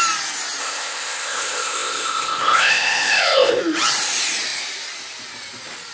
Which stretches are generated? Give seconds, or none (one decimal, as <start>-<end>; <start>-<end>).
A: 0.6-3.6